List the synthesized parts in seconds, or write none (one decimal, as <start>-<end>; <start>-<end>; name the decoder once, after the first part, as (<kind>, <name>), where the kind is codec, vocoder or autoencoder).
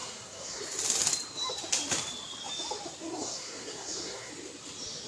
0.0-0.6 (codec, SNAC); 3.1-4.3